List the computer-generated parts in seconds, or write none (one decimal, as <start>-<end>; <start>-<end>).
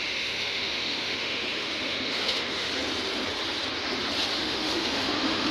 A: 0.0-2.7; 4.4-5.5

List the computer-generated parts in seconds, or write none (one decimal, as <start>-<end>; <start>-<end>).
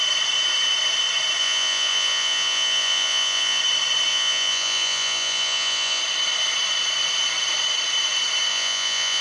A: 1.4-3.6; 4.1-6.0; 8.5-9.2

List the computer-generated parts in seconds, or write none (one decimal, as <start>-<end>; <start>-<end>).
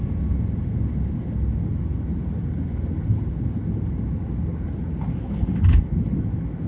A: none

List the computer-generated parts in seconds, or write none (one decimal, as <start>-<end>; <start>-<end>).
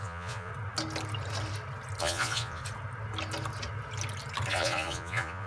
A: 0.0-0.5; 2.0-2.6; 4.5-5.5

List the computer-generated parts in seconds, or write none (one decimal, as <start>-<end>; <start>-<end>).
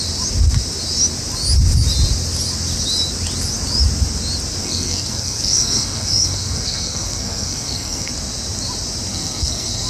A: 4.6-8.1; 9.1-9.9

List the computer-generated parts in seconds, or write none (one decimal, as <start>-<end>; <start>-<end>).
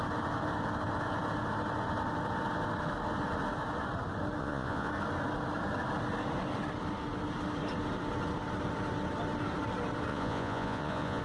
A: 4.4-4.9; 10.1-11.2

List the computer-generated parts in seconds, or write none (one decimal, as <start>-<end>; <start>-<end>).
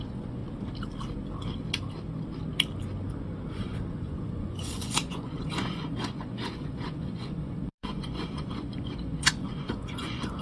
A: 0.0-0.4; 3.5-10.4